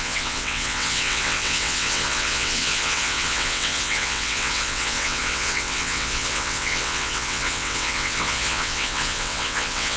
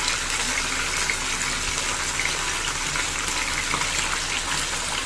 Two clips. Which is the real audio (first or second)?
second